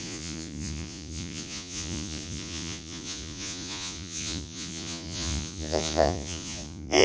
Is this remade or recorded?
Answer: remade